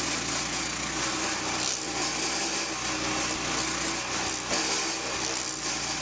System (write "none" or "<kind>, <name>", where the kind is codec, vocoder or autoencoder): none